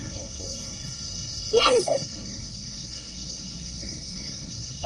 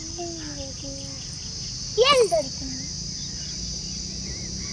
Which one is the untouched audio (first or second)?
second